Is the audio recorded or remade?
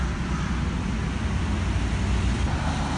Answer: recorded